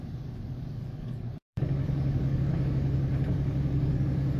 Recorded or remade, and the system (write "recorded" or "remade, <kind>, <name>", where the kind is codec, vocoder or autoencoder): remade, codec, DAC